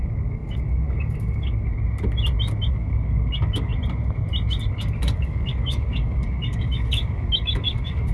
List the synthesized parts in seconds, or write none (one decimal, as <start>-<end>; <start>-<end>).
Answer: 0.0-1.7; 2.7-3.7; 4.7-8.1